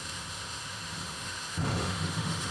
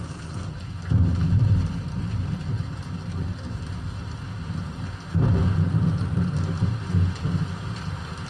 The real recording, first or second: second